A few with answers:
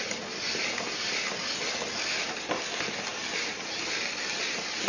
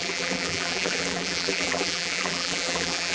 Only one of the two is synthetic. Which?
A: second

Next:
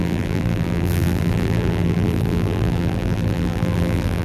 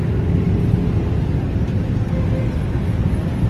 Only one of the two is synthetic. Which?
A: first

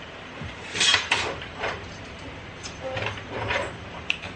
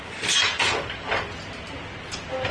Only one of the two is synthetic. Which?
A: first